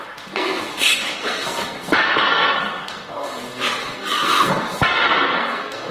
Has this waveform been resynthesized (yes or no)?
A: yes